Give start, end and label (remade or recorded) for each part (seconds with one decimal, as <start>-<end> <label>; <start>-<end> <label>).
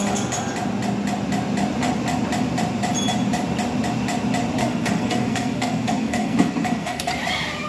0.0-4.6 recorded; 4.6-7.1 remade; 7.1-7.7 recorded